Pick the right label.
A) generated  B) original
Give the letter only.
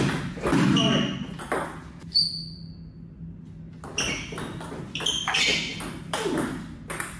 B